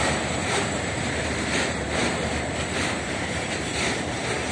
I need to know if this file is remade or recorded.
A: remade